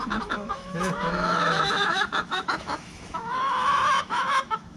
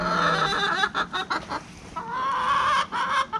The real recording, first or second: second